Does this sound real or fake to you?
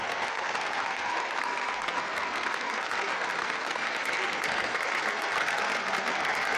fake